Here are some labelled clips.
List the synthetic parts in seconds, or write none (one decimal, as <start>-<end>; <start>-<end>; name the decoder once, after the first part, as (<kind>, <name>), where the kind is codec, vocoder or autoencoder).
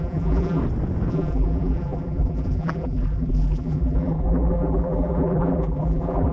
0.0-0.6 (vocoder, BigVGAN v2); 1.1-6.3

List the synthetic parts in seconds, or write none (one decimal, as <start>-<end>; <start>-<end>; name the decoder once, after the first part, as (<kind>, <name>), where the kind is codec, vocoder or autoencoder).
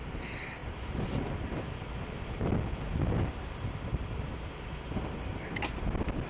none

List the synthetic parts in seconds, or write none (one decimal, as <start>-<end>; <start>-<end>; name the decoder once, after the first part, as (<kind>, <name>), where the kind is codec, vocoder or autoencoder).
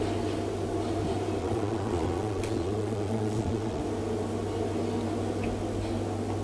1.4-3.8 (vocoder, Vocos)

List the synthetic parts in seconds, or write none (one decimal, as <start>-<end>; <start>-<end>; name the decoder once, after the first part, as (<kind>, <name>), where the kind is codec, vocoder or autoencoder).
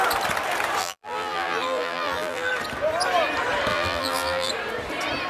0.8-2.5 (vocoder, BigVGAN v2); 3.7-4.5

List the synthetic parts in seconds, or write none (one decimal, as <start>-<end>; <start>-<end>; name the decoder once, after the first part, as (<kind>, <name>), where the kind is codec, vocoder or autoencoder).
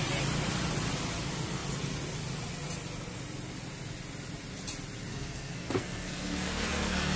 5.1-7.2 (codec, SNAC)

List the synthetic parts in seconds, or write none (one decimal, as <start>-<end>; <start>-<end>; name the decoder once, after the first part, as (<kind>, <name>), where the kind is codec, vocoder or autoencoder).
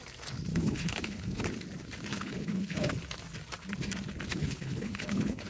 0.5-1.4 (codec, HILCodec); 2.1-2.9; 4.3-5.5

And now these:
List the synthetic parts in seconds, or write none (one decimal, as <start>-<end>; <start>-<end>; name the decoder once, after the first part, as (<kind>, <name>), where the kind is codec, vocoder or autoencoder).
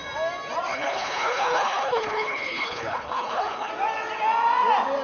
0.7-3.7 (codec, HILCodec)